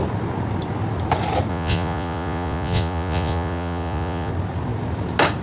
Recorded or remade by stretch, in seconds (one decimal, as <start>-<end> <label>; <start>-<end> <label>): 0.0-1.5 recorded; 1.5-4.3 remade; 4.3-5.4 recorded